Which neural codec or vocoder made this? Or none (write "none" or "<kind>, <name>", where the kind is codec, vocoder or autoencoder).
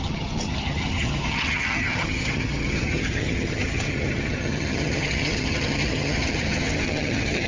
vocoder, HiFi-GAN